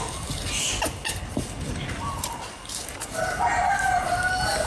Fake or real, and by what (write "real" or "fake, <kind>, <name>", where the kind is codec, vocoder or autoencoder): real